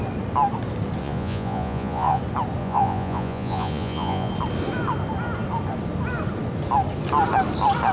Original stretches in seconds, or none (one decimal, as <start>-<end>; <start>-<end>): 0.0-1.0; 2.2-2.6; 4.3-7.9